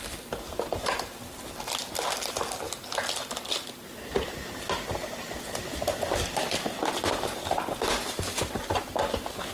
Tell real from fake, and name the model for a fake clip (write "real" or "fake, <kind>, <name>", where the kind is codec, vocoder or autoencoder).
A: real